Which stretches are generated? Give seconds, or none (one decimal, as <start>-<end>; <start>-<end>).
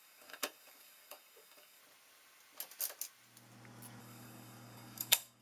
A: 0.0-1.8; 4.0-5.4